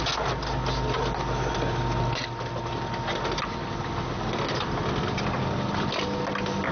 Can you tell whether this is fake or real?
real